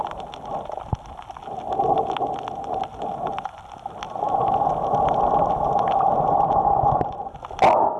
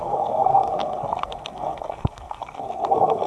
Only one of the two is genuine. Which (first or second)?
first